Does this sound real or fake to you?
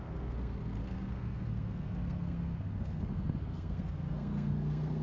fake